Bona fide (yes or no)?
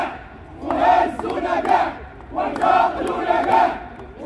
yes